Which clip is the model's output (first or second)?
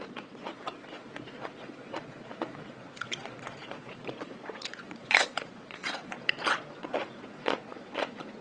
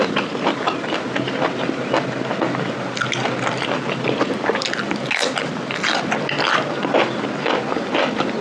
first